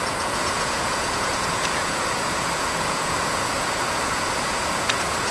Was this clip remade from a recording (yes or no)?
yes